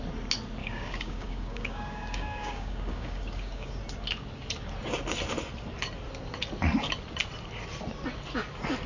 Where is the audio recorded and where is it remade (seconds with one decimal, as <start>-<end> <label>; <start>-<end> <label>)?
0.0-0.6 recorded; 0.6-3.8 remade; 3.8-8.9 recorded